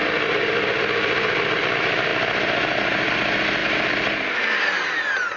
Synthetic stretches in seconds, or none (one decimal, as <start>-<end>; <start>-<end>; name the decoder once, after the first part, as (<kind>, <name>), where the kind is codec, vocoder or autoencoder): 0.0-3.6 (vocoder, BigVGAN v2)